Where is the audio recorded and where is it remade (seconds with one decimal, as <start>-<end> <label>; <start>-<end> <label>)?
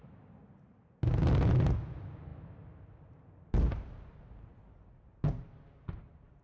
0.0-6.4 recorded